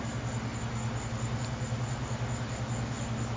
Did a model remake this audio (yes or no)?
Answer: no